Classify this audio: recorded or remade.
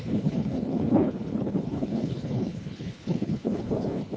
remade